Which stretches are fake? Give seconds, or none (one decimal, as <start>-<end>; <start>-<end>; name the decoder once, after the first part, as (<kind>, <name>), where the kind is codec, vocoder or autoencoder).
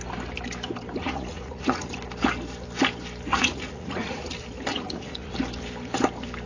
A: 1.0-1.9 (vocoder, Vocos); 3.3-4.2; 4.7-5.3